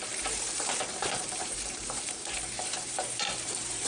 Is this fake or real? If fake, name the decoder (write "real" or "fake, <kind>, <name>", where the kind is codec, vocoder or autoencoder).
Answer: fake, vocoder, BigVGAN v2